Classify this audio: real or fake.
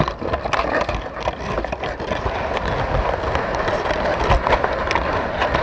real